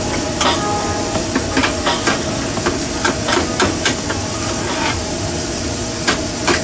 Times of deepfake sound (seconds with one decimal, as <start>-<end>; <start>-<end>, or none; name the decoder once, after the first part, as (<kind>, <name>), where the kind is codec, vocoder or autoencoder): 1.6-5.6 (vocoder, BigVGAN v2)